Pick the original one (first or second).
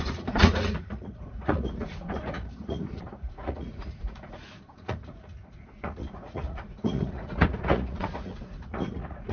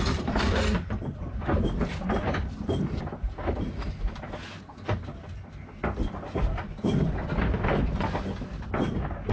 second